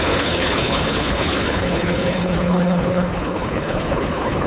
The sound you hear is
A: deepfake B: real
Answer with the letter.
A